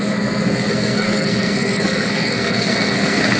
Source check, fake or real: fake